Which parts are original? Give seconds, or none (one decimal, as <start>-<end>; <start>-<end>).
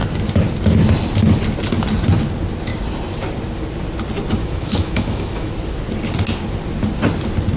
0.0-4.4; 5.5-7.6